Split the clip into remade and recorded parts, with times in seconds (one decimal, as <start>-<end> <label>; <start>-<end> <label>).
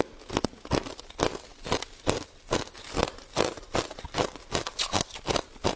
0.0-3.0 recorded; 3.0-5.2 remade; 5.2-5.8 recorded